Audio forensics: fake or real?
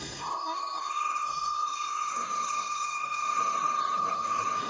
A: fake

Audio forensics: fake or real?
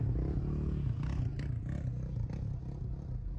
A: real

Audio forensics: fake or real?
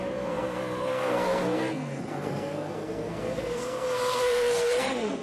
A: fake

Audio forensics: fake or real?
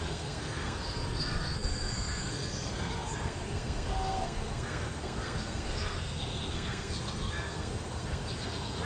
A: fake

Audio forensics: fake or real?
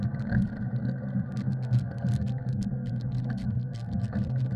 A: fake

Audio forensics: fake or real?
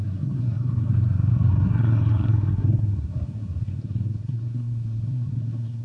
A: fake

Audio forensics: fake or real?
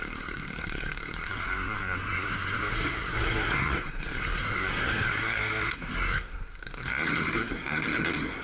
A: fake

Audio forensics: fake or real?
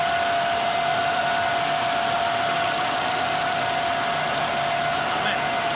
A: real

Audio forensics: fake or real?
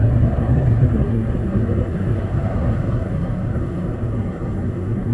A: fake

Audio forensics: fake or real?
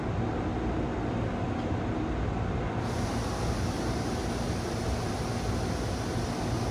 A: real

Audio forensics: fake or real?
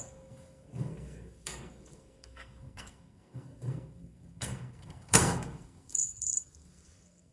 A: fake